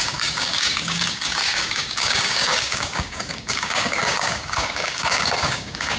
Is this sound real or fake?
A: fake